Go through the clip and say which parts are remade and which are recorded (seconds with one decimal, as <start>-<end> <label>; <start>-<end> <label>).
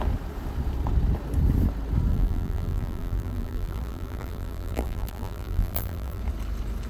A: 0.0-2.1 recorded; 2.1-6.2 remade; 6.2-6.9 recorded